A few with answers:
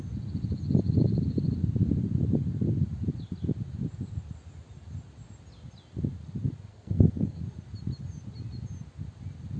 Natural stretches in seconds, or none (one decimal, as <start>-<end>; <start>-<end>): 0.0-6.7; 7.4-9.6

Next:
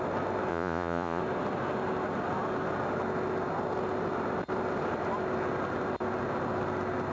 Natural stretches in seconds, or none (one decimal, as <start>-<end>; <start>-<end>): 0.0-0.5; 1.2-7.1

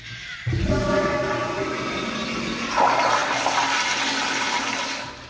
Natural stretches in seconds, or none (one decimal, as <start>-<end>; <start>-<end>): 0.0-5.3

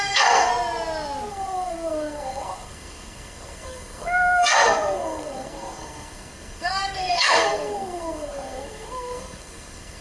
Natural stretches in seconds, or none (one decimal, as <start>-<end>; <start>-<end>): 0.5-1.3

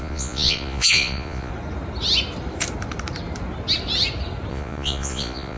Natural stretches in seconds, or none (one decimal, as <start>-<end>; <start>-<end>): 1.5-4.5

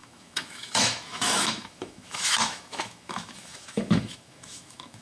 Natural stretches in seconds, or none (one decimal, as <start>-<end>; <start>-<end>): none